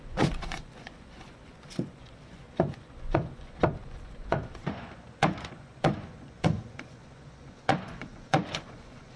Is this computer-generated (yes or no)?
yes